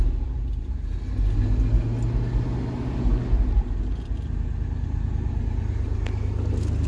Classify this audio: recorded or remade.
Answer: recorded